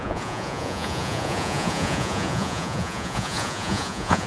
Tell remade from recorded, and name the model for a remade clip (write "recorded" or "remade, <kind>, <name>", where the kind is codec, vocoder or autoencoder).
remade, vocoder, Vocos